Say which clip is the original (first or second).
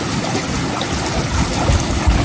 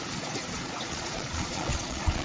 first